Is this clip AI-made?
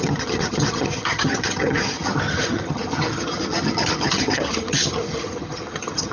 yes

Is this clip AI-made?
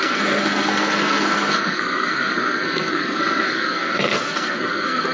yes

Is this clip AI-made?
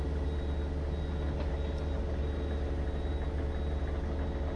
no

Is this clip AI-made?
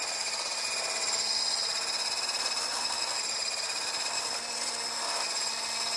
no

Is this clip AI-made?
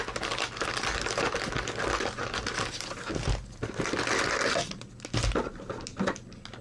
no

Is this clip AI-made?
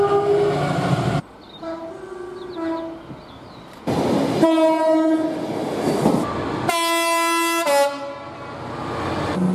no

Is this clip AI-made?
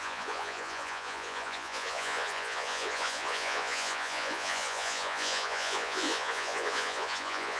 yes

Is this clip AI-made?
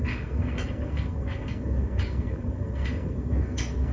yes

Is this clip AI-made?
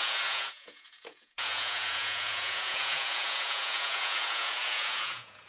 yes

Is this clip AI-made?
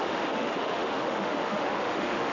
yes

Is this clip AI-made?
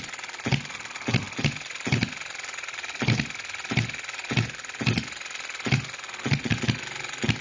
no